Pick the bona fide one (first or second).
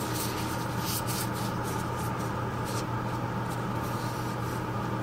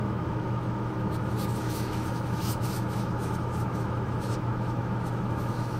first